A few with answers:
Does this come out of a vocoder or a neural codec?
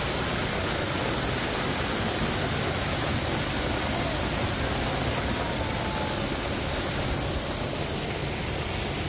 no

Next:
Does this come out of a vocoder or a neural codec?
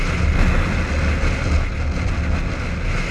no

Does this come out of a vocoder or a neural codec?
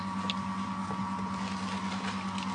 no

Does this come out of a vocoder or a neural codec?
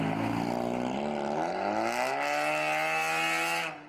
no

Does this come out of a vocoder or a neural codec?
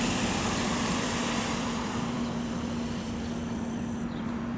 yes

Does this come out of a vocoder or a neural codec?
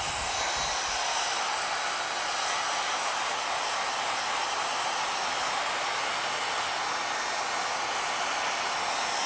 no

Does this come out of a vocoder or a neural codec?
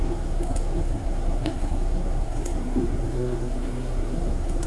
yes